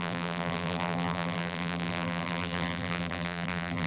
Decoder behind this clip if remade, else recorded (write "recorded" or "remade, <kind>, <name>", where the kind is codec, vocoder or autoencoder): remade, vocoder, BigVGAN v2